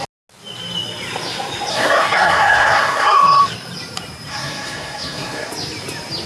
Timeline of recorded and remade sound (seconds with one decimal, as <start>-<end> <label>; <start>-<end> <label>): 0.0-1.7 recorded; 1.7-3.4 remade; 3.4-4.3 recorded; 4.3-5.5 remade; 5.5-6.3 recorded